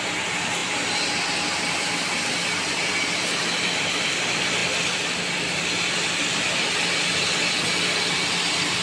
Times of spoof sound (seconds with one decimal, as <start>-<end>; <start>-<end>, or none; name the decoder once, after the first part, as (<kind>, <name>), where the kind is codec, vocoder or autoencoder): none